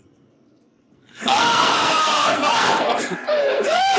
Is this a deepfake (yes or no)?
yes